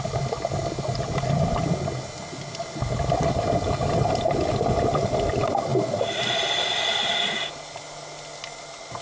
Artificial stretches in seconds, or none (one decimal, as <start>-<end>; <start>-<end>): none